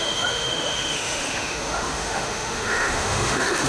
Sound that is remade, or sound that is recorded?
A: remade